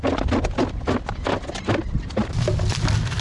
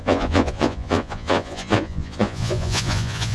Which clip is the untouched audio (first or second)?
first